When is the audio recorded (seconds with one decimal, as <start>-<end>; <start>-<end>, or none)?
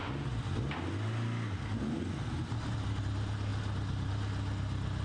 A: 0.0-5.0